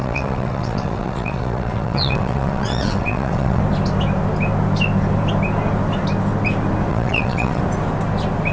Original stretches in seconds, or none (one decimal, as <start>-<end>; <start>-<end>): 3.6-6.9; 7.6-8.5

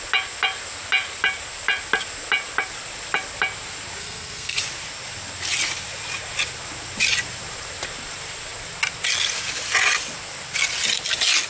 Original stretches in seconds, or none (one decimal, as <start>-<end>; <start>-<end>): 0.0-4.0; 4.6-11.5